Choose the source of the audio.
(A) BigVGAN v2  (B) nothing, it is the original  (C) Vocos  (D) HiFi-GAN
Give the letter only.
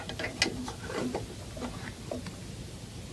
B